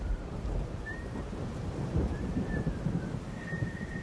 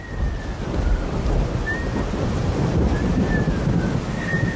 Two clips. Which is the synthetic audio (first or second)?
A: first